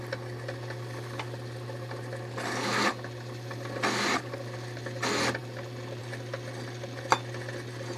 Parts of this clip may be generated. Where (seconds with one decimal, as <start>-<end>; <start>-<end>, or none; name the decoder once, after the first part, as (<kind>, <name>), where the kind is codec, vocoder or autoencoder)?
none